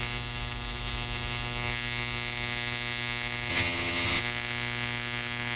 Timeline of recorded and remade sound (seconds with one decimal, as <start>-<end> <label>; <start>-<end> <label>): 0.0-3.5 recorded; 3.5-4.2 remade; 4.2-5.6 recorded